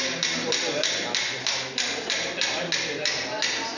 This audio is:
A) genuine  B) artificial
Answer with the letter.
A